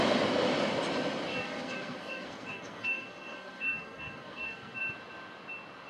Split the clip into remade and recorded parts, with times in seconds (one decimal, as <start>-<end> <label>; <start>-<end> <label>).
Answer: 0.0-1.3 recorded; 1.3-4.8 remade; 4.8-5.9 recorded